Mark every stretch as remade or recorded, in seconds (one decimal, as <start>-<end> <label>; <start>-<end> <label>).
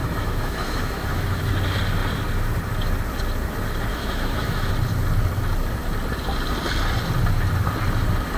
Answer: 0.0-1.5 remade; 1.5-3.9 recorded; 3.9-4.7 remade; 4.7-8.4 recorded